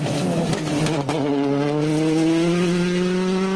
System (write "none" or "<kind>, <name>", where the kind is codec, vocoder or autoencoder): none